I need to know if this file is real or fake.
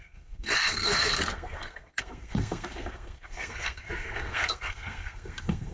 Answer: fake